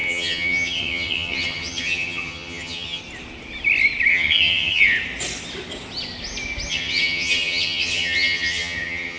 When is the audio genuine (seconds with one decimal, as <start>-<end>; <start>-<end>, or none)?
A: 3.0-4.1; 4.8-6.7